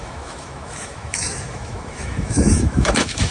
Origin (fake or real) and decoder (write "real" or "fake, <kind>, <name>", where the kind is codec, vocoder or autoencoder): fake, autoencoder, DAC-VAE